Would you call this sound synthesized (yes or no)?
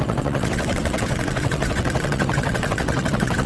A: yes